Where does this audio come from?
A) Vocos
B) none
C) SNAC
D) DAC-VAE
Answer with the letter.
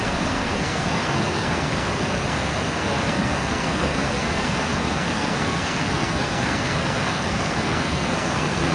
C